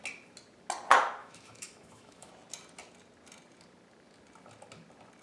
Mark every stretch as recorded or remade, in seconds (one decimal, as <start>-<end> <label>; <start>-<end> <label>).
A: 0.0-1.2 recorded; 1.2-2.3 remade; 2.3-5.2 recorded